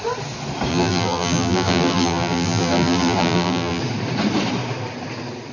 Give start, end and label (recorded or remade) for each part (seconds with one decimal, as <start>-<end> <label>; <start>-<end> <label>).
0.0-0.7 recorded; 0.7-3.8 remade; 3.8-5.5 recorded